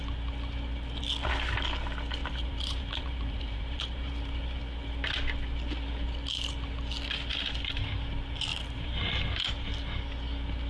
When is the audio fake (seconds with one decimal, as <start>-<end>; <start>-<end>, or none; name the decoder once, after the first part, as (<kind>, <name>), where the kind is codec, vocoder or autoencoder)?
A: 2.2-4.6 (vocoder, BigVGAN v2); 8.5-9.2